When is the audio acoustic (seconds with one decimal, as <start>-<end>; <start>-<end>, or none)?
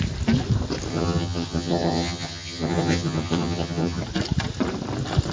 0.0-0.9; 4.0-5.3